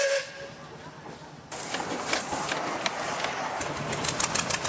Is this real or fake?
real